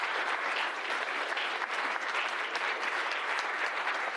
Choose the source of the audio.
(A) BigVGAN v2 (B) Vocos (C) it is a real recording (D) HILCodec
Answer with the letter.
A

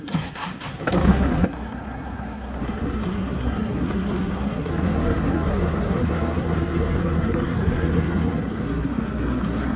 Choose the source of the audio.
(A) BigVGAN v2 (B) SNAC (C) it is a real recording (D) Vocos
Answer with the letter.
B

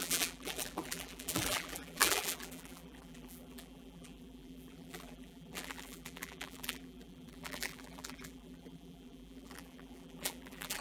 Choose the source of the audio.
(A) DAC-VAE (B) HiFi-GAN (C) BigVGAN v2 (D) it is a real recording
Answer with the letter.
C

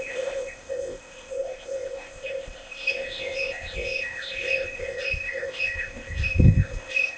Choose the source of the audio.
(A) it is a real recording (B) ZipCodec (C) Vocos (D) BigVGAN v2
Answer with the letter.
B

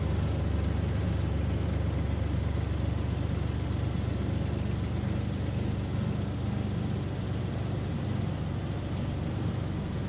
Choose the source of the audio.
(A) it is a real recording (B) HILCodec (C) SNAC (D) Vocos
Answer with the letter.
A